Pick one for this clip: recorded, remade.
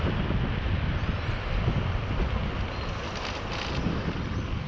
recorded